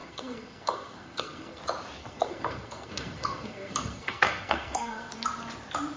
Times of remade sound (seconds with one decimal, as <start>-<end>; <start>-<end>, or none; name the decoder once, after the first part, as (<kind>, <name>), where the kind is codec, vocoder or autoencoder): 0.0-1.6 (codec, SNAC); 2.0-5.1